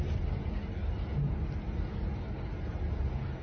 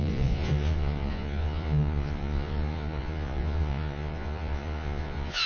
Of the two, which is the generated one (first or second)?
second